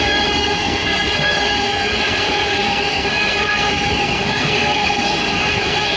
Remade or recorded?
remade